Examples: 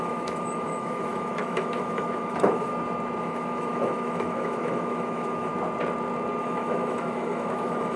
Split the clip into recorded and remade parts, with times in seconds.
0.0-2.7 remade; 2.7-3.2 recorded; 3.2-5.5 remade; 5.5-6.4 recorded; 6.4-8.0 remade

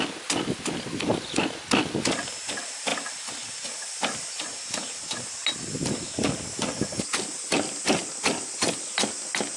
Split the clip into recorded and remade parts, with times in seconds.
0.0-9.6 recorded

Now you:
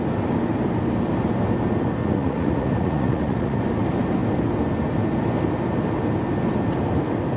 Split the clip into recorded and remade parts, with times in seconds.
0.0-2.0 recorded; 2.0-3.6 remade; 3.6-7.4 recorded